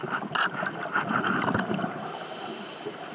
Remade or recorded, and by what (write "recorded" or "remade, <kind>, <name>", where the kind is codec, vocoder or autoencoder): recorded